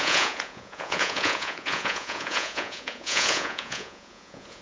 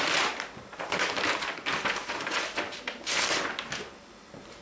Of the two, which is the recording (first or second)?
second